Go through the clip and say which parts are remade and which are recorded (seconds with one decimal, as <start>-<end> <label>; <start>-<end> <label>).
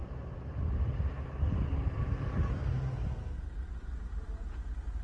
0.0-5.0 recorded